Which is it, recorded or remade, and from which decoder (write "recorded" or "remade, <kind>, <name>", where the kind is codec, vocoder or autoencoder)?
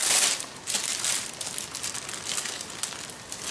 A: recorded